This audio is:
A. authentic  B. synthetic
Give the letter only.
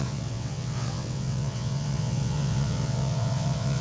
B